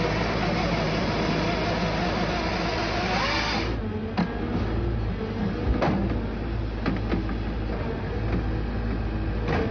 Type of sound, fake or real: real